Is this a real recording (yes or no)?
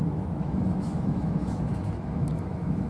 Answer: no